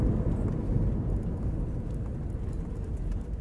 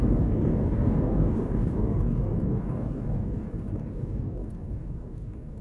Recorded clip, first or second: first